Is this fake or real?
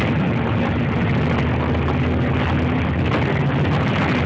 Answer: real